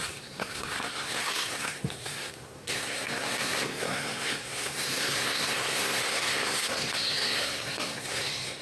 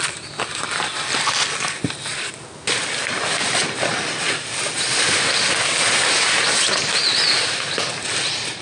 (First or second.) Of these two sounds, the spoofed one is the first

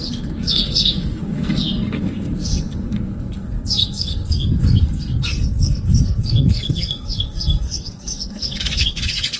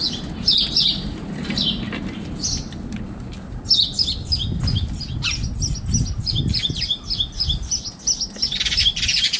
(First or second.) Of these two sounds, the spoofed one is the first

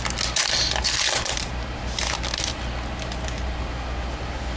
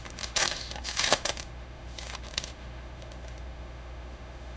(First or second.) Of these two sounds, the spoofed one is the second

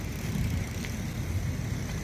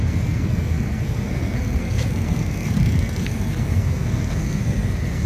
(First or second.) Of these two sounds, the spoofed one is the second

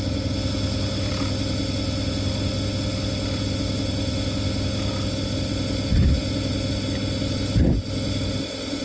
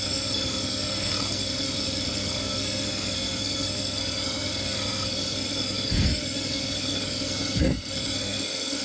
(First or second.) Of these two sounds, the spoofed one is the second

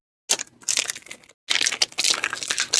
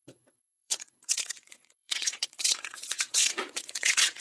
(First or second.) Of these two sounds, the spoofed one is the second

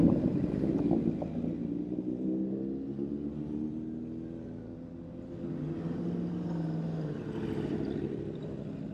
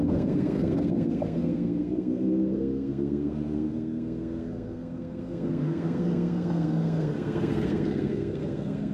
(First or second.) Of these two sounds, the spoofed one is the second